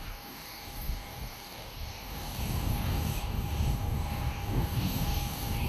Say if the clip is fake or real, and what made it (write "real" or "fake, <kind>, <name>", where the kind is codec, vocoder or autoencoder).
fake, codec, DAC